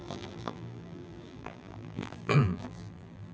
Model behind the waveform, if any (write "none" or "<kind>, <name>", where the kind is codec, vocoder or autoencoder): vocoder, BigVGAN v2